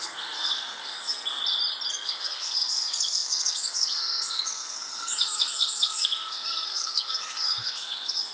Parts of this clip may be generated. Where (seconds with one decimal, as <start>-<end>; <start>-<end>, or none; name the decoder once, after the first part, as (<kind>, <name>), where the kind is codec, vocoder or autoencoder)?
0.0-1.4 (codec, SNAC); 1.9-8.3